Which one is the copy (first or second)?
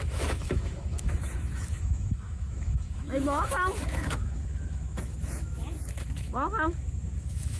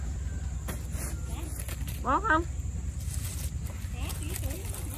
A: first